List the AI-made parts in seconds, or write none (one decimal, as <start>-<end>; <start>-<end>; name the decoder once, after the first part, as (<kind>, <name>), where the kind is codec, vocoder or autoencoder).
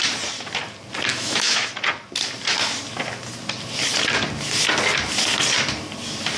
1.1-1.7 (autoencoder, DAC-VAE)